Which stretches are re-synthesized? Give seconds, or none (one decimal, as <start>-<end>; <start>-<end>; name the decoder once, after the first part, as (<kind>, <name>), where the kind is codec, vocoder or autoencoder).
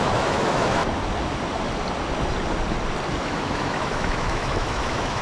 0.0-0.8 (autoencoder, DAC-VAE); 3.2-5.2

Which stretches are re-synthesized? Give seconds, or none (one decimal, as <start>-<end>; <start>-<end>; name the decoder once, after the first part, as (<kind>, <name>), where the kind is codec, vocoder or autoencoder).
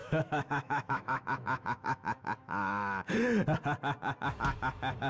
0.0-3.1 (autoencoder, DAC-VAE)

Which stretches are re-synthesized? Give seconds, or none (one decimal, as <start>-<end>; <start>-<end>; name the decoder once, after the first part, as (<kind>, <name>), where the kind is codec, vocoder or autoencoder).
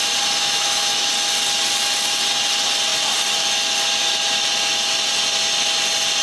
0.4-1.1 (autoencoder, DAC-VAE)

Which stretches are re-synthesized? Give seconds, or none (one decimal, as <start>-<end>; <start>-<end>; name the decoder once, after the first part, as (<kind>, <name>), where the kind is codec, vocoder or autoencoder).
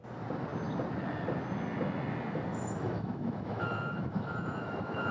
2.5-5.1 (autoencoder, DAC-VAE)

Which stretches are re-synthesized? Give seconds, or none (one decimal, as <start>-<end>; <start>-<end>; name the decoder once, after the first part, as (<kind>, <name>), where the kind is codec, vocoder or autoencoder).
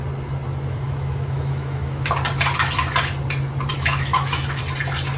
0.7-2.1 (autoencoder, DAC-VAE); 3.7-4.6